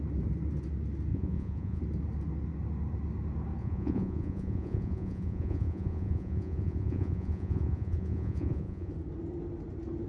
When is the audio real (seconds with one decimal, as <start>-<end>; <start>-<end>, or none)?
0.0-1.1; 1.8-3.6; 8.9-10.1